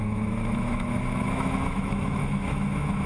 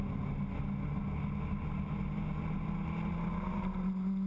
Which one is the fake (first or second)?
first